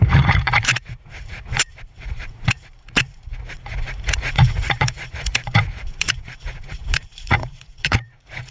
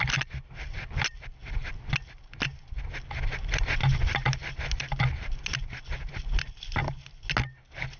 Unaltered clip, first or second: second